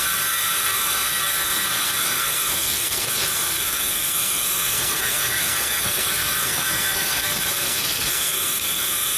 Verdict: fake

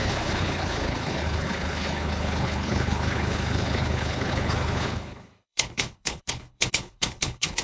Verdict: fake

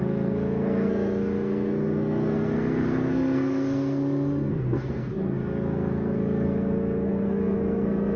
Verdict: fake